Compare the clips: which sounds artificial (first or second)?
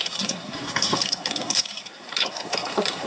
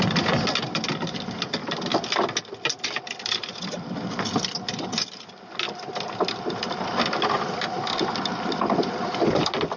first